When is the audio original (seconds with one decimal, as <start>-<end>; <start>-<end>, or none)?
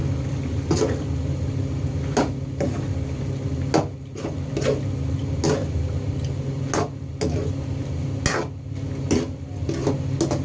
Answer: 1.8-10.4